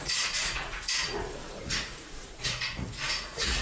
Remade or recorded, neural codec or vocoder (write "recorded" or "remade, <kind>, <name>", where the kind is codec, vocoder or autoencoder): remade, vocoder, Vocos